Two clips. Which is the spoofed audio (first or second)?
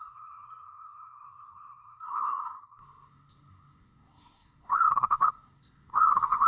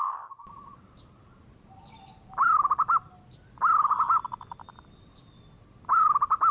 first